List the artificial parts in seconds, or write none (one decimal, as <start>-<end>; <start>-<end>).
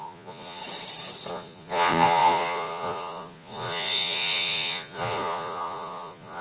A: 0.0-0.6; 1.3-6.4